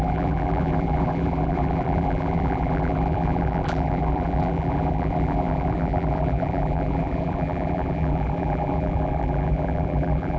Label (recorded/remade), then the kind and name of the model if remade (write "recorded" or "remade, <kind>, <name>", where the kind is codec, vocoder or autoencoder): remade, vocoder, BigVGAN v2